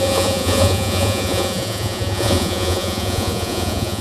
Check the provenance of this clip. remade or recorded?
remade